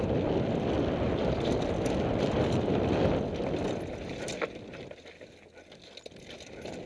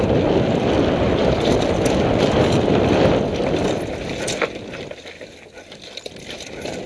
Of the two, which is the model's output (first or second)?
second